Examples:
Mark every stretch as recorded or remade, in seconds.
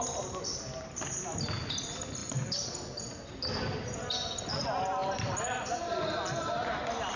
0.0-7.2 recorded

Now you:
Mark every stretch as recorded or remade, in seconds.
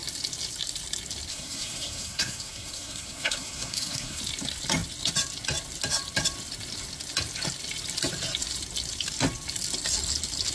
0.0-1.3 recorded; 1.3-4.2 remade; 4.2-10.5 recorded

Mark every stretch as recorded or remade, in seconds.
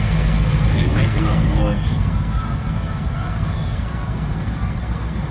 0.0-5.3 remade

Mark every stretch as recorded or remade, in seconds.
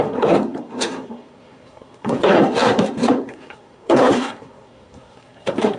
0.0-5.8 remade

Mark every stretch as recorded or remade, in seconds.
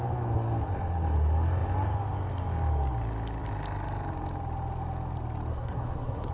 0.0-5.5 recorded; 5.5-6.3 remade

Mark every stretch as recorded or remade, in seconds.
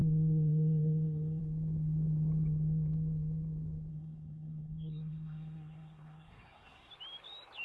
0.0-1.4 remade; 1.4-3.9 recorded; 3.9-6.9 remade; 6.9-7.6 recorded